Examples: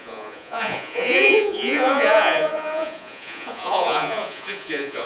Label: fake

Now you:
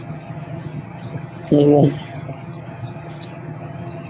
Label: fake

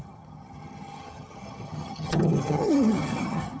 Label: fake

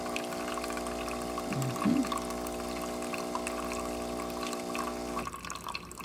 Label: real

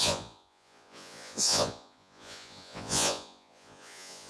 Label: fake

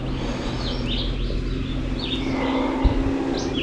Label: real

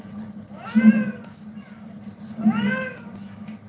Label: real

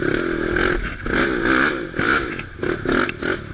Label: real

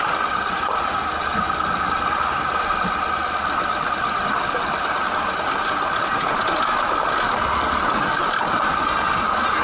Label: real